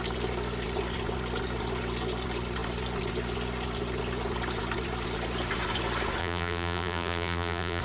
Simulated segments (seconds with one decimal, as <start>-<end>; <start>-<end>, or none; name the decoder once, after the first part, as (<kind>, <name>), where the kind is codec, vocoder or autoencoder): 6.2-7.8 (vocoder, BigVGAN v2)